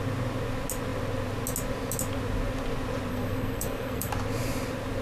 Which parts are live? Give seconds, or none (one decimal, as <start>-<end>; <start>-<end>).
0.0-3.1; 4.1-5.0